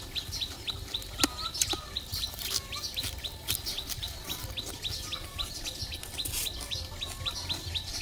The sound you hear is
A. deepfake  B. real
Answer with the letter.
B